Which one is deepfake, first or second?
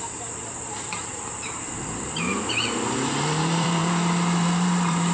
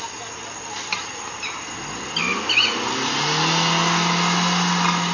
first